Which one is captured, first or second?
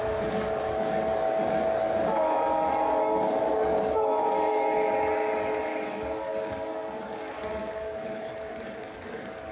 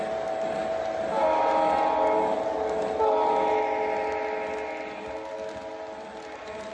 second